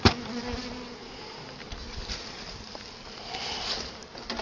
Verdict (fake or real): real